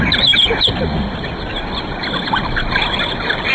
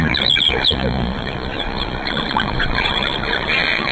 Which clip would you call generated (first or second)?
second